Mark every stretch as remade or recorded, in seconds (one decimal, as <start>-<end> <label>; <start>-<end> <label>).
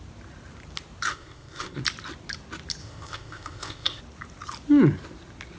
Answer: 0.0-1.1 recorded; 1.1-1.8 remade; 1.8-2.8 recorded; 2.8-4.0 remade; 4.0-5.6 recorded